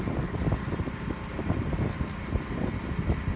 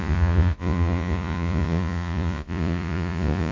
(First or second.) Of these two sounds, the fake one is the second